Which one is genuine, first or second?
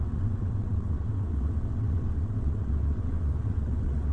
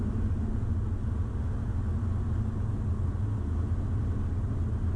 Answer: second